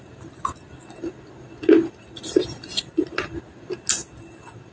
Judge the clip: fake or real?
real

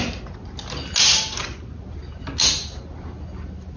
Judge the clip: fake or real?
real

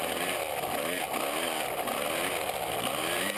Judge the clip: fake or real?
real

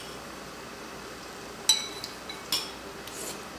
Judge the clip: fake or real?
real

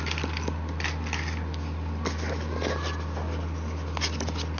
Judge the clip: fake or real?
real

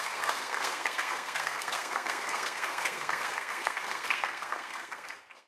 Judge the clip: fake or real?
fake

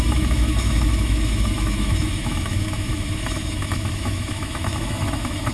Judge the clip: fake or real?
fake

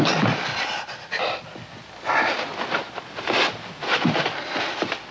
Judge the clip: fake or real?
real